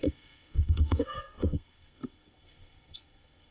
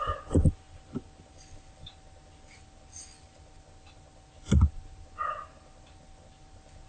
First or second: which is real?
second